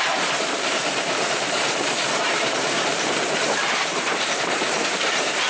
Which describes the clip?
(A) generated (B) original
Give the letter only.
A